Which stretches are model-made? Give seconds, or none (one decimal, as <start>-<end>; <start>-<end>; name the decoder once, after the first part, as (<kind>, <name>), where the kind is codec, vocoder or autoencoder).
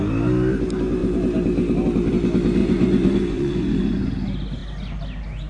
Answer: 2.6-4.1 (vocoder, Vocos)